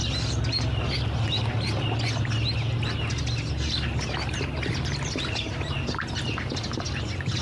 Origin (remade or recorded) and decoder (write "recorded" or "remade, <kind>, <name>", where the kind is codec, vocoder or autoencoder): recorded